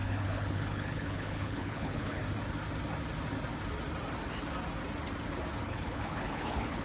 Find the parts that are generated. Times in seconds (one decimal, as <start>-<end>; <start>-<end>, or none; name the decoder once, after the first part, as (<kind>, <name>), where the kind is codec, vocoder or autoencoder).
0.0-2.2 (codec, HILCodec); 5.6-6.8